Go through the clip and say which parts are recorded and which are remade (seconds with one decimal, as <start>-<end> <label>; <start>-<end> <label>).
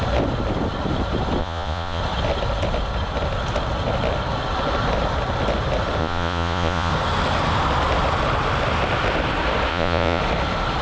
0.0-1.4 recorded; 1.4-2.0 remade; 2.0-6.0 recorded; 6.0-6.9 remade; 6.9-9.7 recorded; 9.7-10.2 remade; 10.2-10.8 recorded